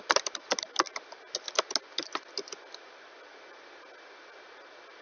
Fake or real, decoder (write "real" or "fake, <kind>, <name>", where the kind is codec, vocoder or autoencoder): real